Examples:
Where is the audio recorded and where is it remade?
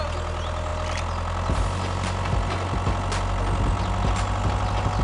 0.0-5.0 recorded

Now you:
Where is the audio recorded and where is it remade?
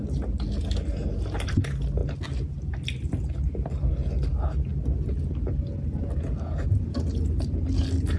0.0-8.2 recorded